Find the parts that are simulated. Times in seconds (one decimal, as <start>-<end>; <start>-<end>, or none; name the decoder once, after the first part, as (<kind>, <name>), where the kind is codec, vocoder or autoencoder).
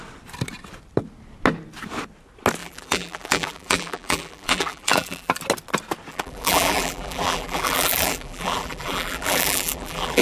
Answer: 2.6-5.4 (vocoder, BigVGAN v2); 6.1-10.2